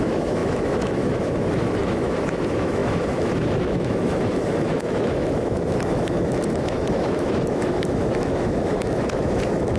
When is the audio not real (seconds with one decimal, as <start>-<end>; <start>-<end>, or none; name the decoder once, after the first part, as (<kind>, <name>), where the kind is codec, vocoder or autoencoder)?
0.0-9.8 (autoencoder, DAC-VAE)